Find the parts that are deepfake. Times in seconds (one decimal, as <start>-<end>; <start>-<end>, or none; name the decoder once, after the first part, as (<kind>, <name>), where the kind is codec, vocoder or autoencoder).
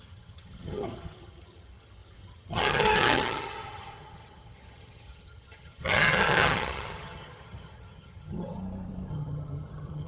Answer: 0.0-8.6 (vocoder, HiFi-GAN); 9.1-10.1